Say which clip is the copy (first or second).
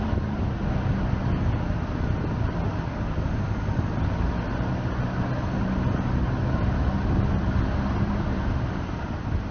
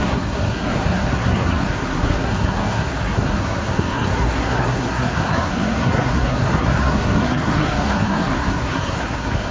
second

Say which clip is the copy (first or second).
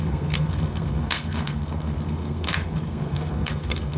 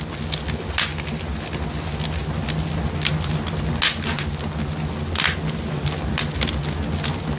first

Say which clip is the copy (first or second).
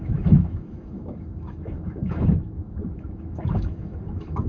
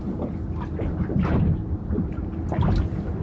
first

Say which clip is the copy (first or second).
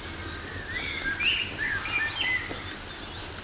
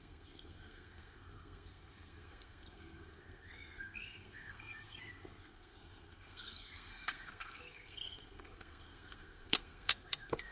second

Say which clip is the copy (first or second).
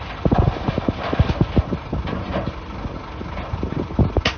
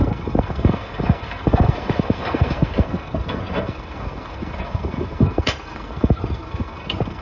second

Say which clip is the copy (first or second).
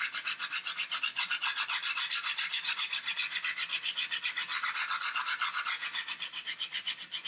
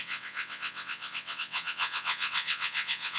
second